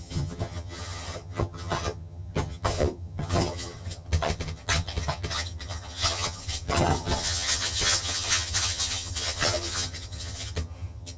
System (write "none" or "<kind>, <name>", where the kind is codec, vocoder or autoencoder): vocoder, HiFi-GAN